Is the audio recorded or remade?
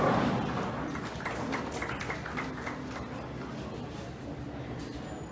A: recorded